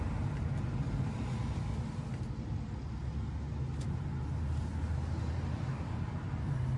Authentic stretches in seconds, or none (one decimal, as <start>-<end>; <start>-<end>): 0.0-6.8